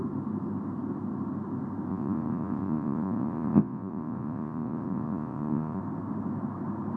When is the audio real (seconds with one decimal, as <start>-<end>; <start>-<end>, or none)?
0.0-1.9; 5.8-7.0